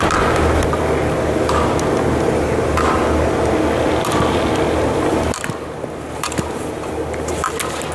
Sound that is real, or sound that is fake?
real